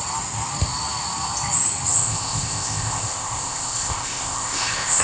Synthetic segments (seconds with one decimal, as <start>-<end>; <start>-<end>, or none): 1.9-5.0